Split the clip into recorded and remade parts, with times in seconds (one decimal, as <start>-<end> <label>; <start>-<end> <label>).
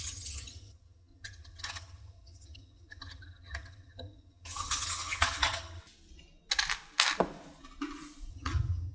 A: 0.0-5.8 remade; 5.8-8.3 recorded; 8.3-8.9 remade